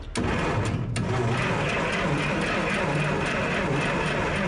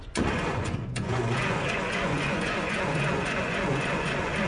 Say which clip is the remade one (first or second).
second